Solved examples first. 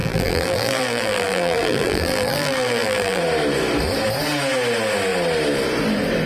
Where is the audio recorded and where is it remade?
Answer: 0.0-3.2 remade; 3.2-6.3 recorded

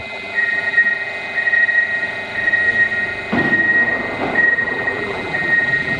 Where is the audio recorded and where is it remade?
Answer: 0.0-0.9 remade; 0.9-4.5 recorded; 4.5-6.0 remade

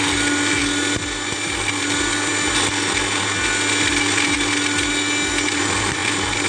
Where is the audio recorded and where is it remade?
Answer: 0.0-6.5 recorded

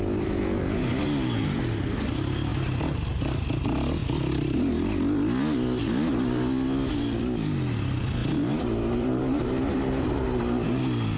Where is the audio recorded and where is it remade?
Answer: 0.0-8.2 recorded; 8.2-10.4 remade; 10.4-11.2 recorded